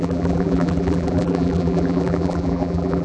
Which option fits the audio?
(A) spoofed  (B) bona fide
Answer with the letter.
A